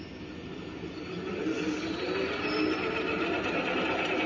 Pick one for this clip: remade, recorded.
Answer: recorded